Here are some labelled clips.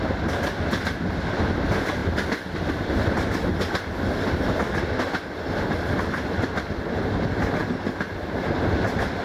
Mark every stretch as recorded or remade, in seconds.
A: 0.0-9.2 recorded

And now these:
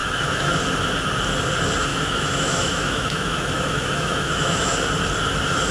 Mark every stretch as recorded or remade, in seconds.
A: 0.0-0.5 remade; 0.5-1.9 recorded; 1.9-4.7 remade; 4.7-5.7 recorded

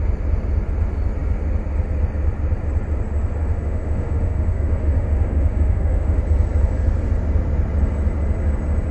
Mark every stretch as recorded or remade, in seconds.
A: 0.0-3.4 recorded; 3.4-6.2 remade; 6.2-8.9 recorded

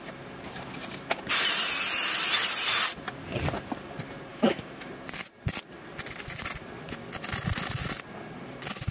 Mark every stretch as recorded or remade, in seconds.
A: 0.0-4.3 recorded; 4.3-4.9 remade; 4.9-8.9 recorded